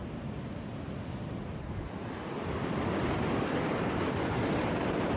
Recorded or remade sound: recorded